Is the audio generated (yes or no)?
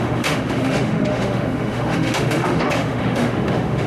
yes